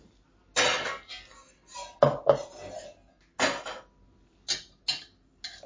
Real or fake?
real